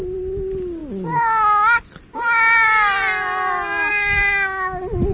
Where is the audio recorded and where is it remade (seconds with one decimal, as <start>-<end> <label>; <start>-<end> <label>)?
0.0-5.1 recorded

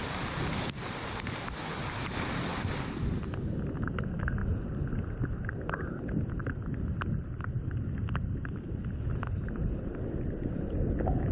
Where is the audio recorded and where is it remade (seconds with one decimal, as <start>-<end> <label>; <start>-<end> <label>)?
0.0-11.3 recorded

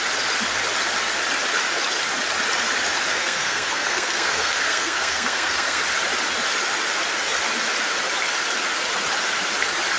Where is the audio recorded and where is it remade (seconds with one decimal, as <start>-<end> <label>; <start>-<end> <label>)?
0.0-3.1 recorded; 3.1-5.8 remade; 5.8-10.0 recorded

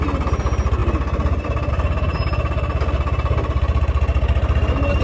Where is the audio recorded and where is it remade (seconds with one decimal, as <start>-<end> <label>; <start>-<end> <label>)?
0.0-5.0 recorded

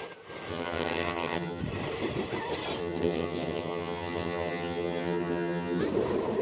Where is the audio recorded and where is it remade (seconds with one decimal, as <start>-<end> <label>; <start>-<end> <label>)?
0.0-0.5 recorded; 0.5-1.6 remade; 1.6-2.8 recorded; 2.8-5.8 remade; 5.8-6.4 recorded

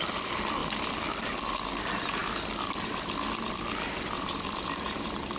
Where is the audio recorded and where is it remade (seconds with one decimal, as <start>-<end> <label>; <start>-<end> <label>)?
0.0-5.4 recorded

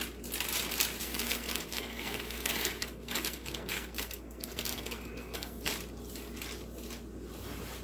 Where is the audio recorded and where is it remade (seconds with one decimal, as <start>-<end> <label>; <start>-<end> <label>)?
0.0-1.0 recorded; 1.0-5.7 remade; 5.7-7.8 recorded

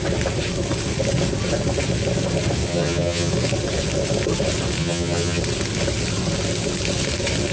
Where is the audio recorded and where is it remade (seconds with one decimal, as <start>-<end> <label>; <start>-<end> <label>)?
0.0-2.7 recorded; 2.7-3.3 remade; 3.3-4.8 recorded; 4.8-5.4 remade; 5.4-7.5 recorded